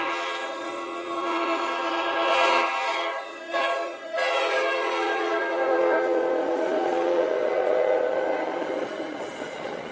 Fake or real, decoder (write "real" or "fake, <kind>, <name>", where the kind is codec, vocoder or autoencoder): fake, vocoder, Vocos